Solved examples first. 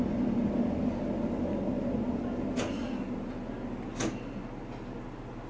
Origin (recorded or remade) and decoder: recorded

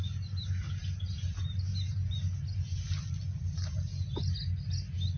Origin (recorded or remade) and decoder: recorded